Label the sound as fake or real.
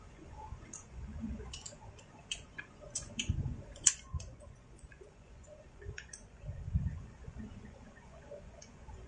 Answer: fake